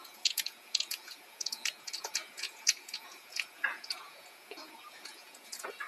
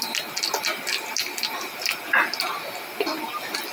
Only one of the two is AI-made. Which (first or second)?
first